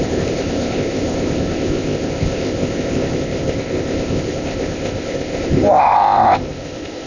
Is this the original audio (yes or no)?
no